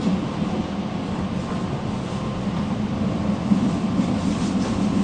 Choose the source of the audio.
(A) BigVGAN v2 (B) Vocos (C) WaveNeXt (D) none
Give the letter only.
A